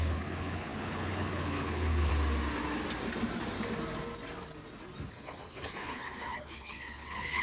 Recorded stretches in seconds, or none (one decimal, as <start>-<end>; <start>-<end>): 2.1-5.1